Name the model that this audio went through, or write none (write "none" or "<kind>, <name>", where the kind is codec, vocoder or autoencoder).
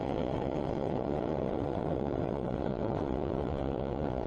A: vocoder, WaveNeXt